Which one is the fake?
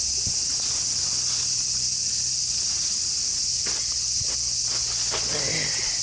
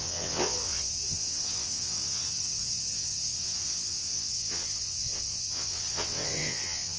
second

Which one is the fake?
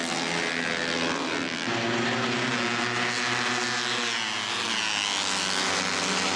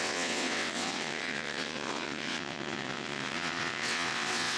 second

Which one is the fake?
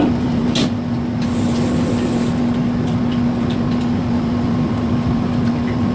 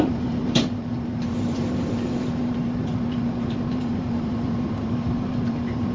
second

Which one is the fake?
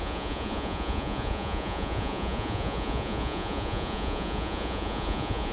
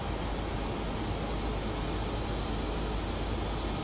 first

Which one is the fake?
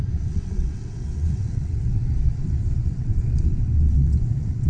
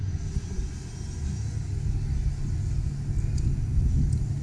first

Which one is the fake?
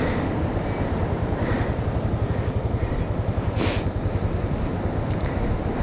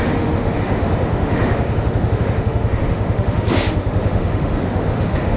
second